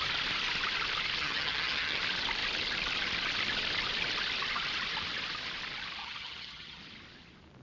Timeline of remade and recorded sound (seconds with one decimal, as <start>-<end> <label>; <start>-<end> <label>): 0.0-1.2 recorded; 1.2-2.0 remade; 2.0-6.0 recorded; 6.0-6.8 remade; 6.8-7.6 recorded